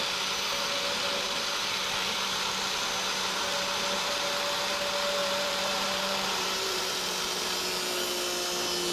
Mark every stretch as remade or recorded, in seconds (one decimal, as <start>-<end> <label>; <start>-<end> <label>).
0.0-5.2 recorded; 5.2-6.8 remade; 6.8-8.9 recorded